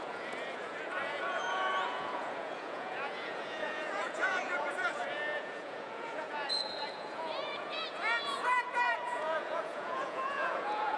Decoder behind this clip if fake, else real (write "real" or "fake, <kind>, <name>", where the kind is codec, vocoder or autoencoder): fake, vocoder, Vocos